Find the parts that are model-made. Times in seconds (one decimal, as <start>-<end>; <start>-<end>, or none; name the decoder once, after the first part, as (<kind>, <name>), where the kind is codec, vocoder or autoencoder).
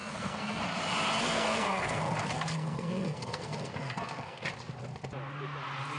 0.0-0.6 (codec, SNAC); 1.2-4.5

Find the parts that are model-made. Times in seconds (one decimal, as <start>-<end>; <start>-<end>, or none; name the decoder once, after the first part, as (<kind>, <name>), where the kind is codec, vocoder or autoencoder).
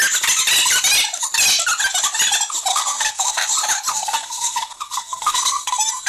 2.7-3.5 (codec, SNAC); 3.9-6.1